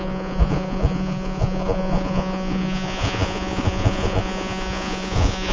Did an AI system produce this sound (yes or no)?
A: yes